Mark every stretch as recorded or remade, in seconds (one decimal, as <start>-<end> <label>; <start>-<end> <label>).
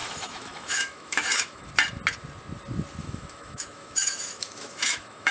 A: 0.0-1.7 remade; 1.7-3.0 recorded; 3.0-5.3 remade